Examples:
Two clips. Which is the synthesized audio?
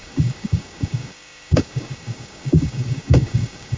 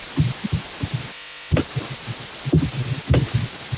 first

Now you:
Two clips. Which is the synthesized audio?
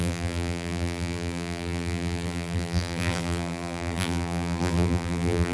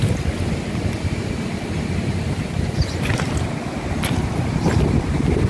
first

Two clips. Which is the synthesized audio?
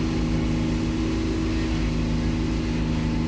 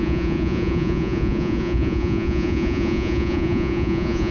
second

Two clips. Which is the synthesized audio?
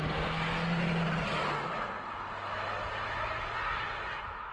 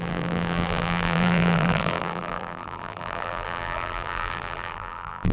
second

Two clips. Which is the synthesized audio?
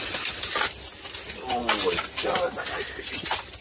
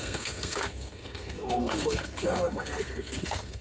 second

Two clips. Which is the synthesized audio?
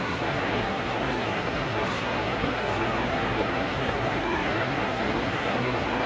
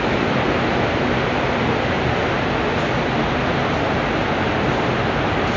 first